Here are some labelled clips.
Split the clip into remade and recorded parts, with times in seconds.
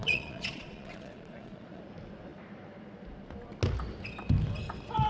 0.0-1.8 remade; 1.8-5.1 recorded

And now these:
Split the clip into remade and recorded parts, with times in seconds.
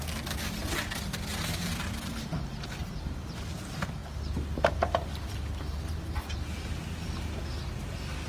0.0-8.3 recorded